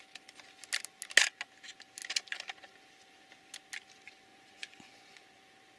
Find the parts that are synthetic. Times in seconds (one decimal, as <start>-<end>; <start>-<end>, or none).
4.3-5.2